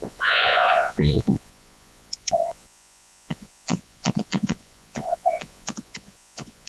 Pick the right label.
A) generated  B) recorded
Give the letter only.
A